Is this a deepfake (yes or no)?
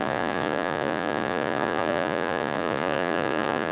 yes